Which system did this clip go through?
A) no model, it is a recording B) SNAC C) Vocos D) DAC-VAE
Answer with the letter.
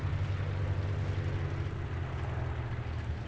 A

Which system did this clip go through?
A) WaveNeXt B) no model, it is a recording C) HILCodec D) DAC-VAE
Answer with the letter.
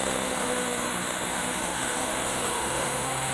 D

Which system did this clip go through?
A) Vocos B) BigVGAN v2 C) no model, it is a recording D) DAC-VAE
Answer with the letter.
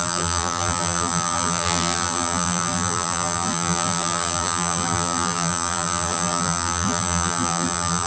B